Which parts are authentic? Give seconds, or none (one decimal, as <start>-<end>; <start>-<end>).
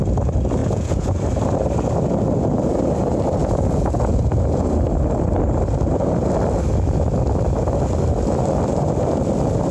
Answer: 0.0-0.6; 1.2-3.4; 4.7-9.7